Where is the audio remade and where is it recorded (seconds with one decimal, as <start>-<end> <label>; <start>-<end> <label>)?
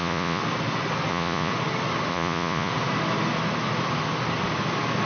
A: 0.0-0.4 remade; 0.4-1.1 recorded; 1.1-1.5 remade; 1.5-2.1 recorded; 2.1-2.7 remade; 2.7-5.1 recorded